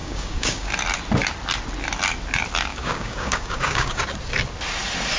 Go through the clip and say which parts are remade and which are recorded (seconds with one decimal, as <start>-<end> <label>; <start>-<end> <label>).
0.0-0.7 remade; 0.7-2.7 recorded; 2.7-4.0 remade; 4.0-5.2 recorded